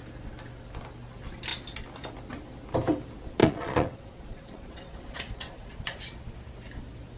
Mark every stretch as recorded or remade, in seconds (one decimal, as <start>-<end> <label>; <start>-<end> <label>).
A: 0.0-3.4 recorded; 3.4-6.0 remade; 6.0-7.2 recorded